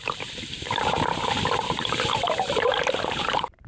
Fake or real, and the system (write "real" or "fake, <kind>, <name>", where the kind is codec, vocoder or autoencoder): fake, vocoder, BigVGAN v2